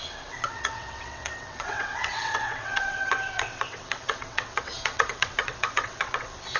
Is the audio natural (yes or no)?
no